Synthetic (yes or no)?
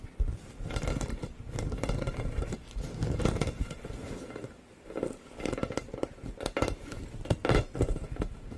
no